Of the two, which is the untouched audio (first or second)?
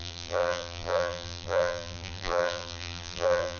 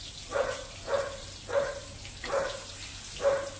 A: second